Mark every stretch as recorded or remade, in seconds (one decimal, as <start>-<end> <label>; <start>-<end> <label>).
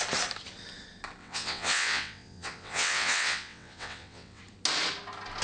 0.0-1.2 recorded; 1.2-4.4 remade; 4.4-5.4 recorded